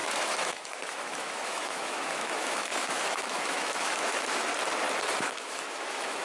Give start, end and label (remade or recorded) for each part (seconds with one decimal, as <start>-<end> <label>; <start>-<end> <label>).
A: 0.0-4.5 remade; 4.5-5.2 recorded; 5.2-6.2 remade